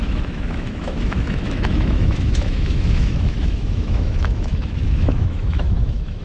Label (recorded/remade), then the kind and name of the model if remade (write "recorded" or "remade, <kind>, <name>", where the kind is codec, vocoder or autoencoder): remade, autoencoder, DAC-VAE